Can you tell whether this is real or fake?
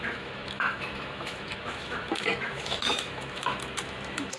fake